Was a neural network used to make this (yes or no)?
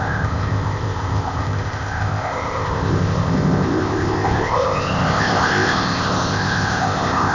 yes